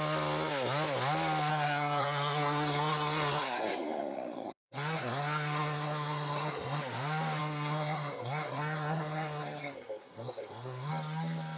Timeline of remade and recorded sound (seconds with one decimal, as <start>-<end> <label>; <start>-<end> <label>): 0.0-1.5 recorded; 1.5-6.8 remade; 6.8-7.4 recorded; 7.4-10.9 remade; 10.9-11.6 recorded